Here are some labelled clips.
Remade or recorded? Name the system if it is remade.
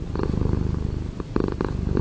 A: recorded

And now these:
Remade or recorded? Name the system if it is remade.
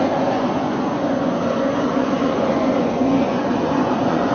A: remade, vocoder, Vocos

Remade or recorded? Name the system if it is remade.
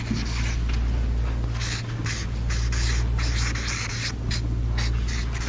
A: recorded